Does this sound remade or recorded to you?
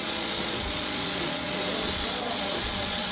remade